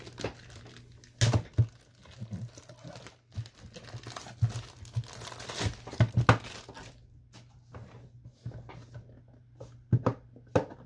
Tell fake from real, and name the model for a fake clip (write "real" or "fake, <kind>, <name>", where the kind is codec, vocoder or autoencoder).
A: real